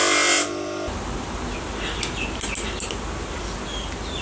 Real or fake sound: real